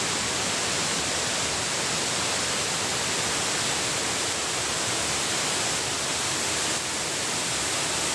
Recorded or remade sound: recorded